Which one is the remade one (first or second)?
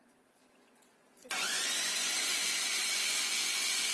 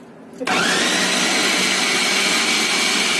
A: first